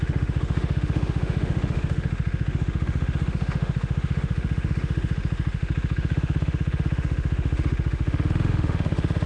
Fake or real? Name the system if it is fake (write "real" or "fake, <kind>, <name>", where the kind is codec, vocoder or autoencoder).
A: fake, autoencoder, DAC-VAE